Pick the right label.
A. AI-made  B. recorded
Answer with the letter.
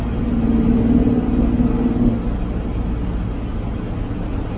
B